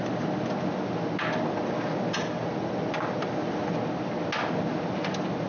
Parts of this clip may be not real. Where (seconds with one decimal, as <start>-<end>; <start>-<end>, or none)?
none